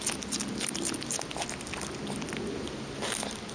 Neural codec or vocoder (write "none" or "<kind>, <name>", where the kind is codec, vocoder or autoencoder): none